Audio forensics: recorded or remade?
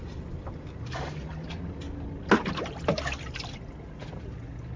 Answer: recorded